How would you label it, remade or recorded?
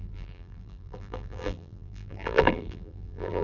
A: remade